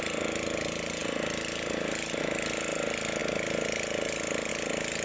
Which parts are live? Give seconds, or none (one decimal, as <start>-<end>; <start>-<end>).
0.0-5.0